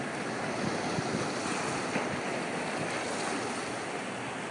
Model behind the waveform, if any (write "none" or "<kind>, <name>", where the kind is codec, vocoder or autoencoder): none